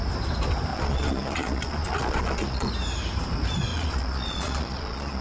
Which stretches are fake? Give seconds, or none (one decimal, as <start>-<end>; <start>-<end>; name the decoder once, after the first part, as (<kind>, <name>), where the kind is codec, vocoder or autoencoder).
0.7-2.7 (vocoder, Vocos); 3.7-5.2